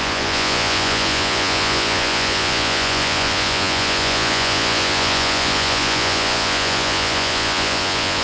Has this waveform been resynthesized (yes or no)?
yes